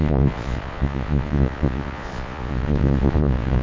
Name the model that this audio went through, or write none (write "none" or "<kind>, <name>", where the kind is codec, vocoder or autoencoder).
vocoder, Vocos